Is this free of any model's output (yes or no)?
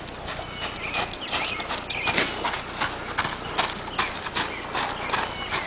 yes